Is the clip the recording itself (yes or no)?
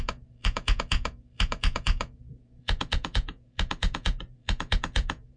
no